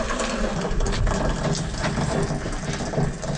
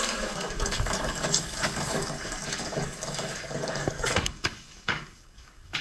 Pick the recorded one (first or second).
first